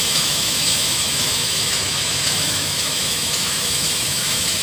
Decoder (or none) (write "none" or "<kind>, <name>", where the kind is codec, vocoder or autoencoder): autoencoder, DAC-VAE